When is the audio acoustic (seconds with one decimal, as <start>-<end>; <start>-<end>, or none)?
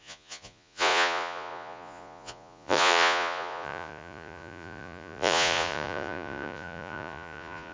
none